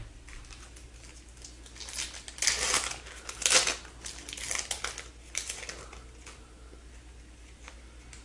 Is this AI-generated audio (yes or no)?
no